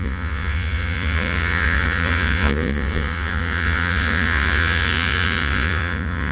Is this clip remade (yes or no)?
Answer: yes